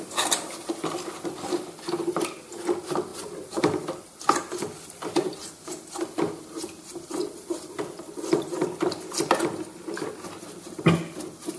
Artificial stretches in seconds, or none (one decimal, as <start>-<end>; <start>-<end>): 3.1-7.8